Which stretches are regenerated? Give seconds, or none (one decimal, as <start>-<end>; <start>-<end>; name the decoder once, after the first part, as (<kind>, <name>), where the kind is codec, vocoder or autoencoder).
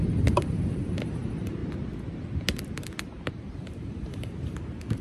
0.0-1.6 (vocoder, BigVGAN v2); 3.3-5.0